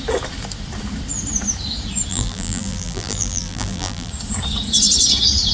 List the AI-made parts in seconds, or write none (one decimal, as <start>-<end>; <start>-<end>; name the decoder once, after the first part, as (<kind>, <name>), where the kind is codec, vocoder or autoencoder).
2.1-4.1 (vocoder, BigVGAN v2)